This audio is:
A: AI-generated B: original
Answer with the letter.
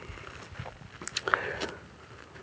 B